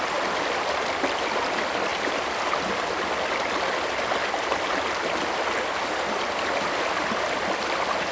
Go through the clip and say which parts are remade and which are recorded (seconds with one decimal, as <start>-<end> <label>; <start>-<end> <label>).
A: 0.0-8.1 recorded